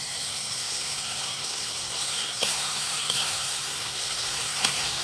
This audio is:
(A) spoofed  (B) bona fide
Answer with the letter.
A